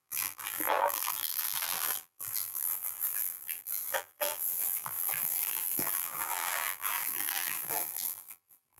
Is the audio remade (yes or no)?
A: yes